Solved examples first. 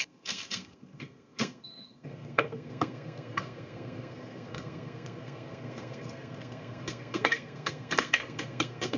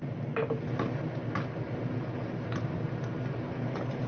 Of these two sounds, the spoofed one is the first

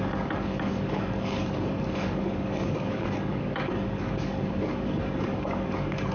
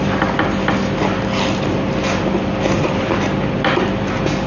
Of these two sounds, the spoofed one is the first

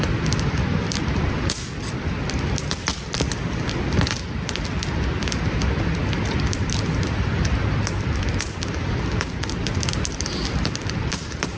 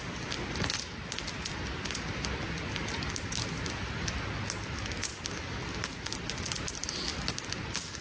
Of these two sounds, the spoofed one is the first